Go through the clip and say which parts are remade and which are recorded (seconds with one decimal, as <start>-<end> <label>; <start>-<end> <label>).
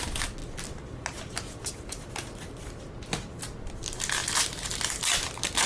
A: 0.0-5.7 recorded